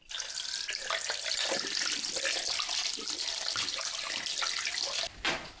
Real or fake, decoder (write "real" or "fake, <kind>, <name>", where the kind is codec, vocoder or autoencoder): real